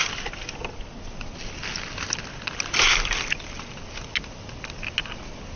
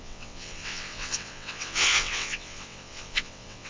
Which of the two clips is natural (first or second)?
first